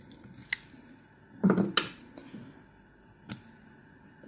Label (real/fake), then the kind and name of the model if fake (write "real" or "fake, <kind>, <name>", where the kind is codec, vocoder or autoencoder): real